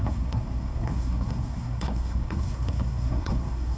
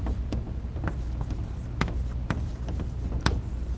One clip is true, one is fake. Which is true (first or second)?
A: second